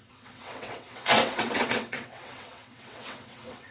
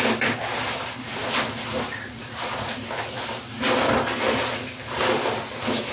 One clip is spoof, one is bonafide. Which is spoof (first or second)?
first